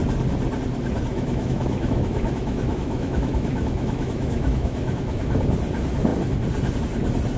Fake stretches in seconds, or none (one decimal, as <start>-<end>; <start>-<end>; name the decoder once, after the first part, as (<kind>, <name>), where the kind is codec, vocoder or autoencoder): 1.1-5.3 (autoencoder, DAC-VAE)